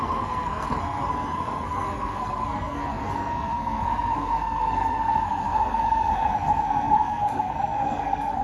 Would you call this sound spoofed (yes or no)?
yes